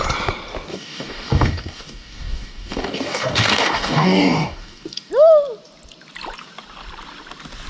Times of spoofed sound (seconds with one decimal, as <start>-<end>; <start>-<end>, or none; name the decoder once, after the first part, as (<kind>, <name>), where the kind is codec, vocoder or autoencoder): 0.7-5.1 (codec, DAC)